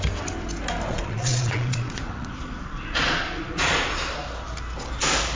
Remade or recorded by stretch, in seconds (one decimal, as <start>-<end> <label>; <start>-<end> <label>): 0.0-0.9 recorded; 0.9-4.1 remade; 4.1-5.3 recorded